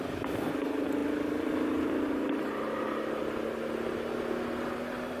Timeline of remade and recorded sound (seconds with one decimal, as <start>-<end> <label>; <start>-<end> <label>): 0.0-5.2 recorded